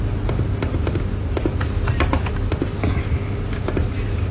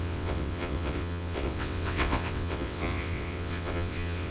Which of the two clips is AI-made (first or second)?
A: second